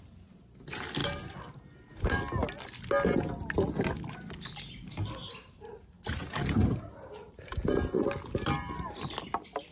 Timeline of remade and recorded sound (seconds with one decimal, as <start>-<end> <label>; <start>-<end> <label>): 0.0-5.2 recorded; 5.2-7.4 remade; 7.4-8.6 recorded; 8.6-9.1 remade; 9.1-9.7 recorded